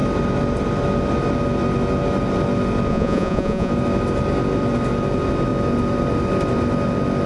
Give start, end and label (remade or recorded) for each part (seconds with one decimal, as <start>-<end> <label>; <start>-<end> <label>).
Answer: 0.0-2.9 recorded; 2.9-3.7 remade; 3.7-7.3 recorded